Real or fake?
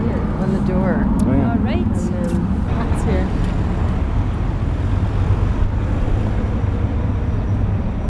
real